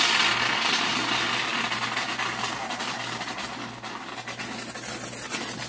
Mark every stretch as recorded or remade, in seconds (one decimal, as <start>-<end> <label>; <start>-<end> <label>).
0.0-5.7 recorded